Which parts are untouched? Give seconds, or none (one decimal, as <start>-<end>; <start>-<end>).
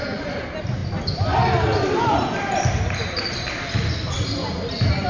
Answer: 0.0-5.1